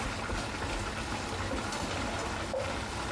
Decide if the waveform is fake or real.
real